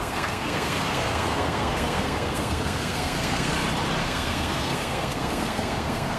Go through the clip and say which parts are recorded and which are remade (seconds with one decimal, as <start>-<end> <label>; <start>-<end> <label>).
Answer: 0.0-3.5 remade; 3.5-4.0 recorded; 4.0-6.2 remade